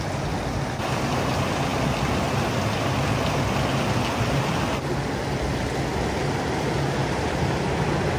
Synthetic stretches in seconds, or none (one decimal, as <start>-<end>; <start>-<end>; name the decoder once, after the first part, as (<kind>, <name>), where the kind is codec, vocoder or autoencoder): none